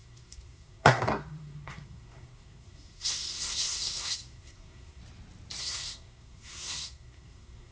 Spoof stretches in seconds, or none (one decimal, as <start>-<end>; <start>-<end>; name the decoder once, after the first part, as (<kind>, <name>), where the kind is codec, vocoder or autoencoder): 0.0-5.0 (codec, SNAC); 5.6-7.7